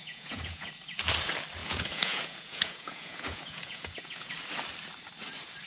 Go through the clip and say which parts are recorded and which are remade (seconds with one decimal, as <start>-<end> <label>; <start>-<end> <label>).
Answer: 0.0-0.7 remade; 0.7-1.6 recorded; 1.6-4.3 remade; 4.3-5.7 recorded